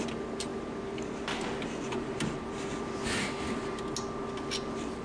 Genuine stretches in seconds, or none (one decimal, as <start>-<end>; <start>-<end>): 0.0-5.0